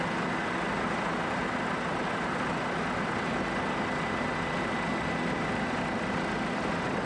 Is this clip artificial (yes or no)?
no